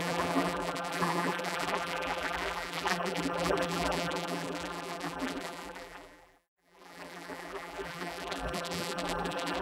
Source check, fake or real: fake